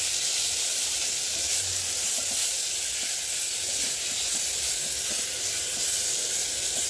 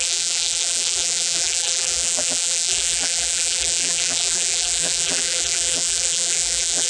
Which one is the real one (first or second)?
first